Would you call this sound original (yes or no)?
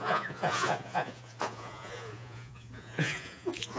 no